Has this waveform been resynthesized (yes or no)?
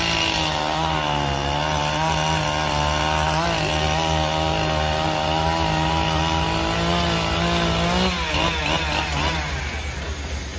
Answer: no